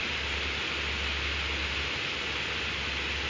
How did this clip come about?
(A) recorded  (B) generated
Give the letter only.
A